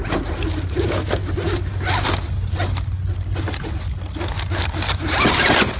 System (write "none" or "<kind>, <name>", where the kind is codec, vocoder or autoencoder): none